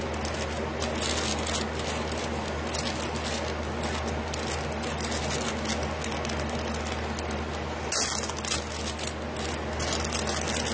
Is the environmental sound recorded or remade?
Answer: recorded